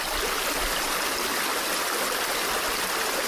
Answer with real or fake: real